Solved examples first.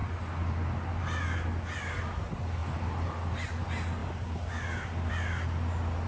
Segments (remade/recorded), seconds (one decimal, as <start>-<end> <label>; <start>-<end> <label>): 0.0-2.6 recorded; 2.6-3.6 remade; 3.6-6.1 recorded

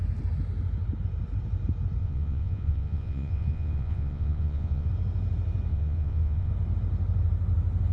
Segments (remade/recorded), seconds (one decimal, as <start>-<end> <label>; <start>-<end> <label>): 0.0-2.0 recorded; 2.0-4.9 remade; 4.9-5.7 recorded; 5.7-6.5 remade; 6.5-7.9 recorded

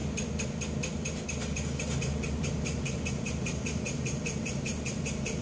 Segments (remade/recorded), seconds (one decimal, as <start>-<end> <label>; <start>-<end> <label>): 0.0-2.4 recorded; 2.4-5.4 remade

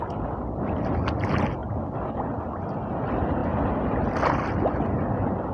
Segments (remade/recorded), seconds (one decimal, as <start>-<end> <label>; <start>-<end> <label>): 0.0-5.5 recorded